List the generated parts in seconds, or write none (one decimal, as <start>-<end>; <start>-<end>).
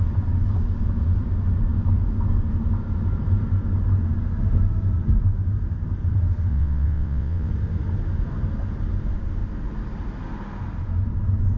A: 6.5-7.5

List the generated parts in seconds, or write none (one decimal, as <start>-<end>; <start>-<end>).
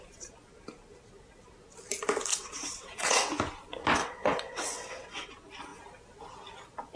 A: 2.3-3.3; 4.0-5.3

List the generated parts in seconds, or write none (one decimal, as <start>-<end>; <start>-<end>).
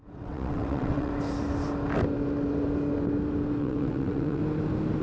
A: 0.0-1.1; 3.6-4.4